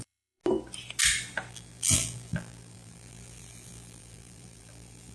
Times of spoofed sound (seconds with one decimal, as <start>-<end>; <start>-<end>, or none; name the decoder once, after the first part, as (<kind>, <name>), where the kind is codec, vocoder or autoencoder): 0.0-0.4 (vocoder, BigVGAN v2); 1.5-5.1